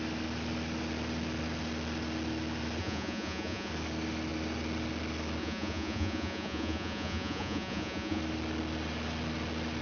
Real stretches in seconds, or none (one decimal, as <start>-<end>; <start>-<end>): 0.0-2.8; 3.7-5.4; 8.2-9.8